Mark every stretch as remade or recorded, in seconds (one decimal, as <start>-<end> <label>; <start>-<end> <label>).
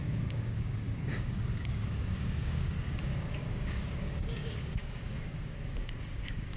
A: 0.0-6.6 remade